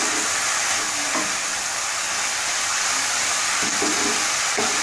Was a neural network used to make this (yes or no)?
no